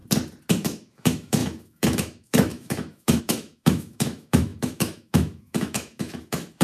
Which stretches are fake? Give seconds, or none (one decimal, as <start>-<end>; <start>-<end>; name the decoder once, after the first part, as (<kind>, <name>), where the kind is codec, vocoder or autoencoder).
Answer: 0.5-6.6 (autoencoder, DAC-VAE)